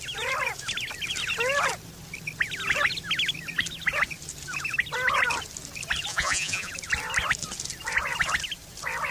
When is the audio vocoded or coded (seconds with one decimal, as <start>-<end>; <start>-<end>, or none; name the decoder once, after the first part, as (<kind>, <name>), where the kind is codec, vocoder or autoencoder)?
6.1-6.7 (vocoder, Vocos)